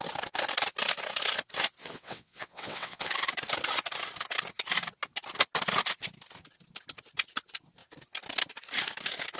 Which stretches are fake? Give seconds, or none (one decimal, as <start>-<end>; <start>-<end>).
1.8-3.1